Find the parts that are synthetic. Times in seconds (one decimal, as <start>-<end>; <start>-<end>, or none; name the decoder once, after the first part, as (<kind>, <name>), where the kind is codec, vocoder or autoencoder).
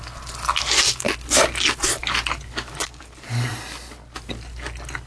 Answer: none